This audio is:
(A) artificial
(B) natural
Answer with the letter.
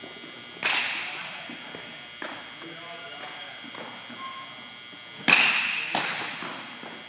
B